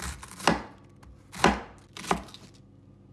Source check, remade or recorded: recorded